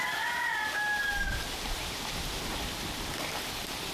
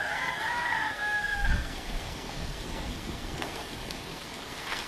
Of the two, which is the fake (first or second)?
second